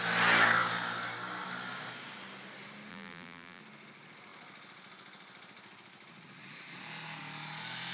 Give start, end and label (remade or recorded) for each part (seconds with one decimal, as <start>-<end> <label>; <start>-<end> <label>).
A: 0.0-2.9 recorded; 2.9-3.6 remade; 3.6-7.9 recorded